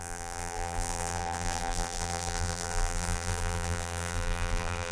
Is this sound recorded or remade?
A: remade